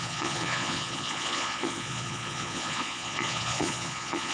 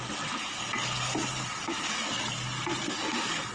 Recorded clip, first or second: second